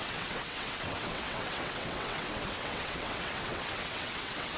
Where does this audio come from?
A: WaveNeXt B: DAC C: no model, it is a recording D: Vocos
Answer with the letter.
A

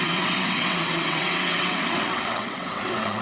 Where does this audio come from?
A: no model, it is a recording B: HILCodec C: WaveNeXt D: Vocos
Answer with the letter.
C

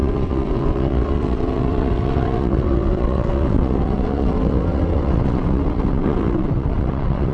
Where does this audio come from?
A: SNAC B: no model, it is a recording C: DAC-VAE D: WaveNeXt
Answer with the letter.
D